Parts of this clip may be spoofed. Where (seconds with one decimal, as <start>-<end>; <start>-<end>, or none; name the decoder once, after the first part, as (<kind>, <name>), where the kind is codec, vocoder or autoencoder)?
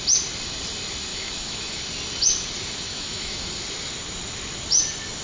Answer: 1.1-1.8 (autoencoder, DAC-VAE); 2.9-3.5